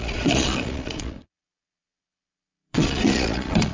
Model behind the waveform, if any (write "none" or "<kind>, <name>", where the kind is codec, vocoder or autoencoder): vocoder, Vocos